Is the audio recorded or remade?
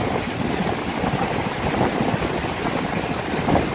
recorded